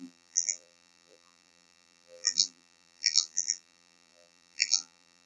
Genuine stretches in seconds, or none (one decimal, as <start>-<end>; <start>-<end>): none

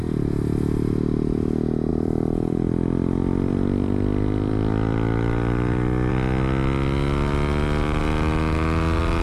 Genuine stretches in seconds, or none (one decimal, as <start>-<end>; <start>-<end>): 0.0-1.9; 6.1-9.2

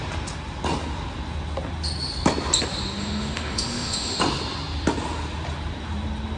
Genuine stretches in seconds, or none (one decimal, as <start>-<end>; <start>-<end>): 0.0-3.0; 4.2-6.4

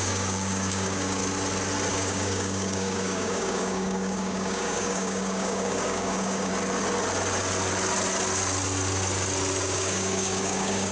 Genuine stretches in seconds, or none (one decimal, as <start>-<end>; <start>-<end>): 1.2-1.9; 6.5-9.6

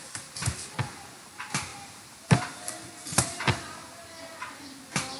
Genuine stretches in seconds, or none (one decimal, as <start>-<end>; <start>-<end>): none

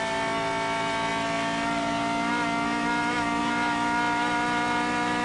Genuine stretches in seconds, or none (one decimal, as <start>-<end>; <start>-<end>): 0.0-5.2

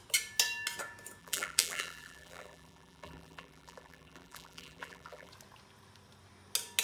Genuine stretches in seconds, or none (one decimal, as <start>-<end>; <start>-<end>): 0.0-1.2; 5.3-6.8